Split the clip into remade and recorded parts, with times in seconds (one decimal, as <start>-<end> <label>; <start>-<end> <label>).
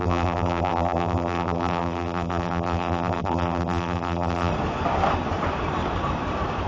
0.0-4.5 remade; 4.5-6.7 recorded